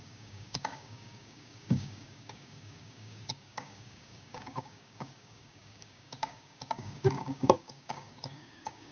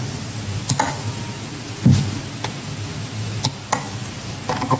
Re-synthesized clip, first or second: first